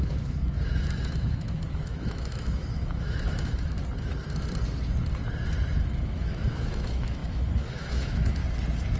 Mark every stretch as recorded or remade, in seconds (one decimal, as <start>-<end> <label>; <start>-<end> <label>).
0.0-3.8 remade; 3.8-5.8 recorded; 5.8-8.4 remade; 8.4-9.0 recorded